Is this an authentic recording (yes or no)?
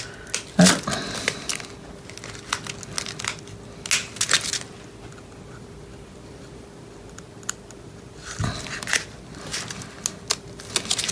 yes